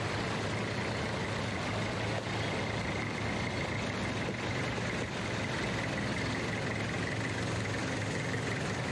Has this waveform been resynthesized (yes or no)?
no